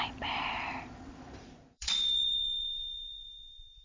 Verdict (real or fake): fake